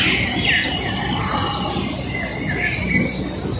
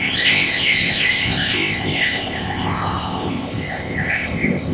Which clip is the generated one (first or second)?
second